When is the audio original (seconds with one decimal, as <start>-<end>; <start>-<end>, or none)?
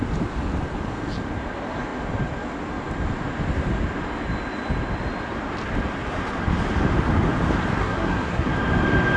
0.0-7.8; 8.5-9.2